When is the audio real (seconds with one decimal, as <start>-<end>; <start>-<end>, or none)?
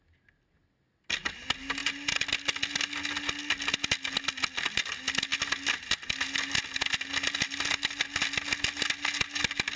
0.0-9.8